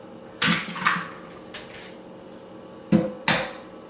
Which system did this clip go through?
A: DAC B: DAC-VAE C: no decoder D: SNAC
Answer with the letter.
C